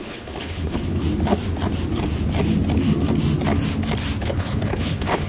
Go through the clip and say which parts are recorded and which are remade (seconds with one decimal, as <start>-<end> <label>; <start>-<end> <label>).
0.0-1.0 remade; 1.0-4.2 recorded; 4.2-5.3 remade